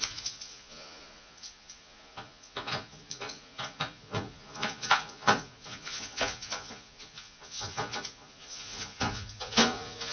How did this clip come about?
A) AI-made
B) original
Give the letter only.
A